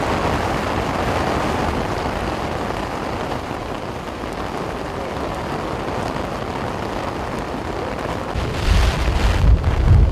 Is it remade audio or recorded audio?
recorded